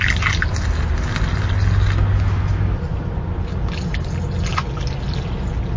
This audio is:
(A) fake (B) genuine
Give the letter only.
B